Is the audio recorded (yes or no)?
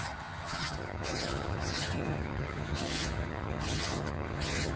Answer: no